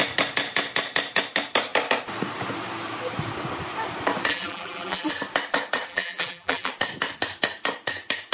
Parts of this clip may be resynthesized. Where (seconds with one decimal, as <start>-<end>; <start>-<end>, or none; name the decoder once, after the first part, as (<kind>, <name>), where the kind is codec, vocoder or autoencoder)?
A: 4.3-5.1 (vocoder, BigVGAN v2); 5.9-6.7